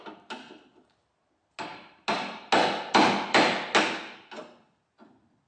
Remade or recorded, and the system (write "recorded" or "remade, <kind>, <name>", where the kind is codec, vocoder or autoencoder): recorded